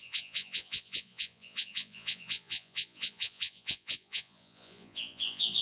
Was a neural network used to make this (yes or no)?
yes